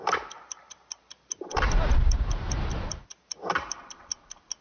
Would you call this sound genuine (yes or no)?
no